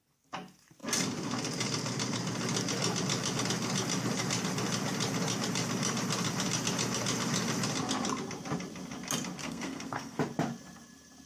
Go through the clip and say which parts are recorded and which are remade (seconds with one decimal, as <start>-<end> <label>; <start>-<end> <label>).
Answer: 0.0-9.4 recorded; 9.4-10.2 remade; 10.2-11.3 recorded